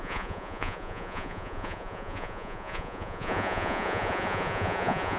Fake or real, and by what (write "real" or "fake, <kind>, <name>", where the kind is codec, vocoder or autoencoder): fake, vocoder, Vocos